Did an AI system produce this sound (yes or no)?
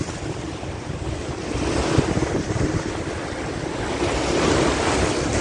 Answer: no